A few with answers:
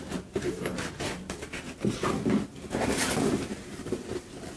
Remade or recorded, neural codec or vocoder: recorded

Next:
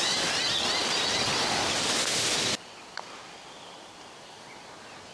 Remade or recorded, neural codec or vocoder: recorded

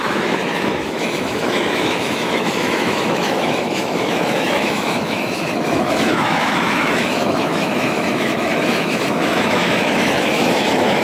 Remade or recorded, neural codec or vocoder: remade, autoencoder, DAC-VAE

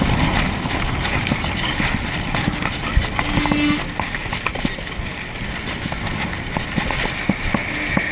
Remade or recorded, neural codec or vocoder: recorded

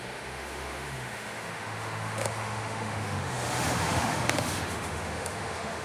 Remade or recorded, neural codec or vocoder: remade, autoencoder, DAC-VAE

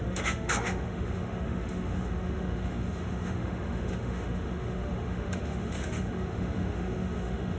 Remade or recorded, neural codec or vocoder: remade, autoencoder, DAC-VAE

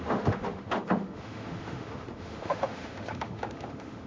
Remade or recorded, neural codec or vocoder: remade, autoencoder, DAC-VAE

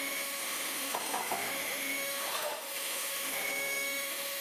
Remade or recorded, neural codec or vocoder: remade, autoencoder, DAC-VAE